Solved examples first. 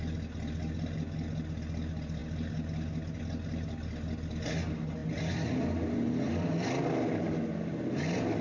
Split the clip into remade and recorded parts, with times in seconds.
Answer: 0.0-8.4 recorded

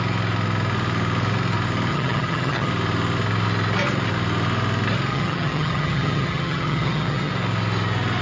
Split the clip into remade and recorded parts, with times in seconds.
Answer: 0.0-1.9 recorded; 1.9-2.7 remade; 2.7-5.1 recorded; 5.1-7.3 remade; 7.3-8.2 recorded

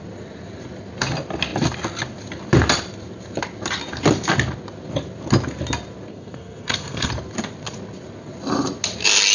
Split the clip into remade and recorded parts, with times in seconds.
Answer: 0.0-6.1 recorded; 6.1-7.1 remade; 7.1-9.3 recorded

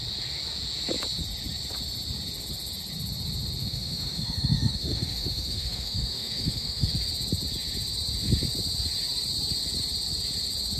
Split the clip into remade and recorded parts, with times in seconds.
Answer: 0.0-3.6 recorded; 3.6-6.9 remade; 6.9-10.8 recorded

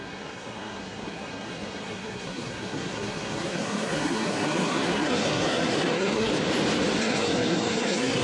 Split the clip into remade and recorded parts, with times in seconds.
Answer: 0.0-6.3 remade; 6.3-7.0 recorded; 7.0-8.2 remade

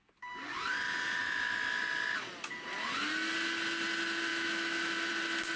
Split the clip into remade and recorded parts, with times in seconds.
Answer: 0.0-1.2 recorded; 1.2-1.8 remade; 1.8-4.3 recorded; 4.3-5.1 remade; 5.1-5.6 recorded